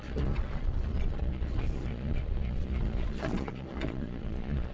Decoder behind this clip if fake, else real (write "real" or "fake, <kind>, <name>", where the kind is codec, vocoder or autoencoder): fake, vocoder, Vocos